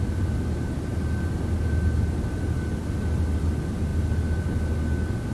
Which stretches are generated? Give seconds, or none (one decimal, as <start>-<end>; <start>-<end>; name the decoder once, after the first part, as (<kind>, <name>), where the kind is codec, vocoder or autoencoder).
none